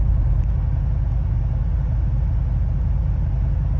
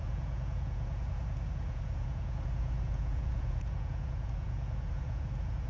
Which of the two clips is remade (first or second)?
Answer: second